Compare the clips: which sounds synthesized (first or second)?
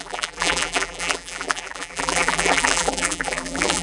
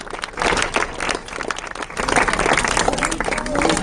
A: first